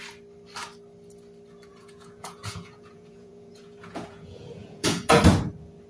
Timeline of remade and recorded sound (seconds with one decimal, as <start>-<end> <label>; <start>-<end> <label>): 0.0-1.7 recorded; 1.7-5.2 remade; 5.2-5.9 recorded